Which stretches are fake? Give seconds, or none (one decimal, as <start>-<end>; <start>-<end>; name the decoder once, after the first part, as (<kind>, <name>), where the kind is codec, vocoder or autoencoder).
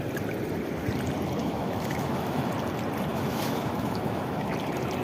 1.4-2.5 (autoencoder, DAC-VAE); 3.1-4.5